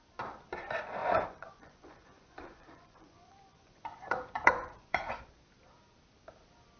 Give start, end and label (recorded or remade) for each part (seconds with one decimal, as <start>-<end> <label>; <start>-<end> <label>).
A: 0.0-1.0 recorded; 1.0-5.1 remade; 5.1-6.8 recorded